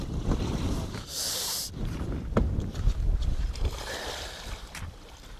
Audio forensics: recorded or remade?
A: remade